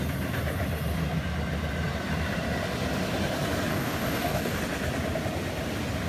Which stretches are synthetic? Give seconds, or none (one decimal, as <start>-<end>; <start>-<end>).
3.7-4.6